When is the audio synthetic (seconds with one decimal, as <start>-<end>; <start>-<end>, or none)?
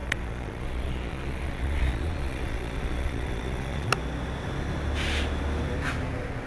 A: 0.0-3.9